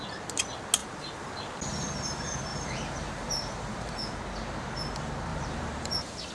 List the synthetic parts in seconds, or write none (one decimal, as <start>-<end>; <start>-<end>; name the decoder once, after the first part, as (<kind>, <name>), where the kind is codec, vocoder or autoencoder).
0.8-1.3 (vocoder, BigVGAN v2); 2.5-4.2; 5.3-6.3